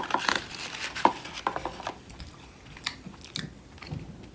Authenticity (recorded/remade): recorded